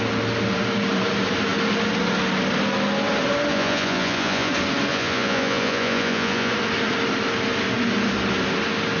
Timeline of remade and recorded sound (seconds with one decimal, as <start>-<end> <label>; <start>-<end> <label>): 0.0-3.5 recorded; 3.5-4.5 remade; 4.5-4.9 recorded; 4.9-6.5 remade; 6.5-9.0 recorded